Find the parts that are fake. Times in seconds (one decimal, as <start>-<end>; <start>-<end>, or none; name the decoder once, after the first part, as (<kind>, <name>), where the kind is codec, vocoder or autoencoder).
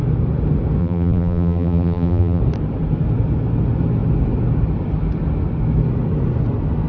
0.8-2.4 (vocoder, BigVGAN v2)